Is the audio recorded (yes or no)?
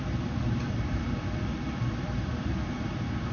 no